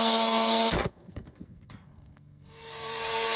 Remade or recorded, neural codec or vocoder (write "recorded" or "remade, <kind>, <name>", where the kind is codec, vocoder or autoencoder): remade, codec, SNAC